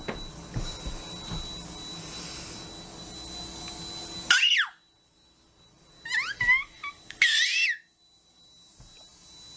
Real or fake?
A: real